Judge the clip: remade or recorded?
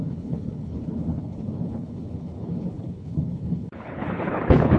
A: remade